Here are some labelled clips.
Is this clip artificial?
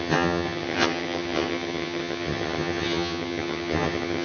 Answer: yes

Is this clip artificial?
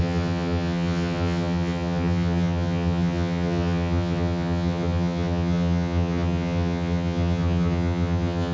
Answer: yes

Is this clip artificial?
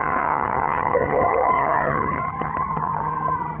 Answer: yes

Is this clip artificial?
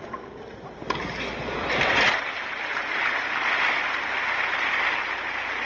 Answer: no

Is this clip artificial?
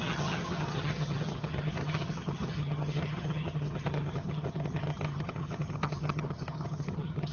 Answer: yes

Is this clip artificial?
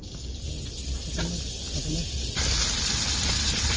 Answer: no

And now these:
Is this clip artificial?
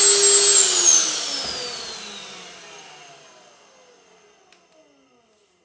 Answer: no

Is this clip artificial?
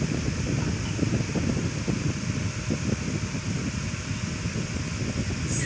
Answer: no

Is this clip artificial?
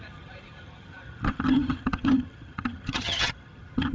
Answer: yes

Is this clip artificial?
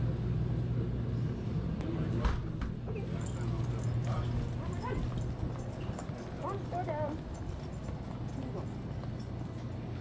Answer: no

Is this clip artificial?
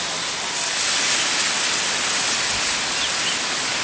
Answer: no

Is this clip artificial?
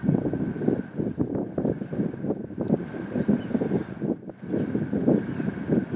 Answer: no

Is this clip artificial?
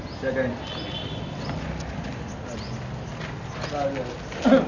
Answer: no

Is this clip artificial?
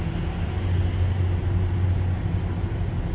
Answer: no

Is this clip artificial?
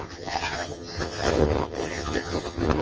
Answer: yes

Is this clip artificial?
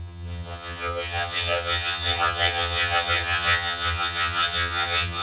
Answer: yes